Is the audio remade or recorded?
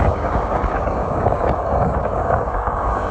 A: remade